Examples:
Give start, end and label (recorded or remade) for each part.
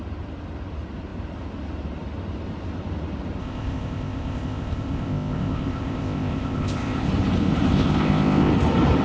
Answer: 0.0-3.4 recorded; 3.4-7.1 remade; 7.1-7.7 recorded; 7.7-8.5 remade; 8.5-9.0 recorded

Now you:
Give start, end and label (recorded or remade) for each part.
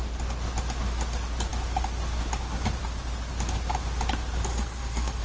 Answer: 0.0-4.5 recorded; 4.5-5.2 remade